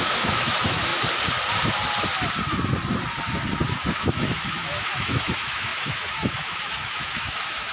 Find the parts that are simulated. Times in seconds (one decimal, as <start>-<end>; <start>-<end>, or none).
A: 0.0-0.9; 3.9-7.7